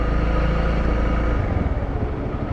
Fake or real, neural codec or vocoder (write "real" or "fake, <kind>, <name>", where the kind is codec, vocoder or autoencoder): real